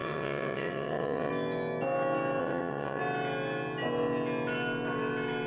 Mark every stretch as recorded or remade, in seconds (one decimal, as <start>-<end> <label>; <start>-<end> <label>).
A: 0.0-1.3 remade; 1.3-2.4 recorded; 2.4-3.0 remade; 3.0-5.5 recorded